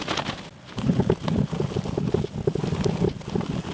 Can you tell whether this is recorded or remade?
recorded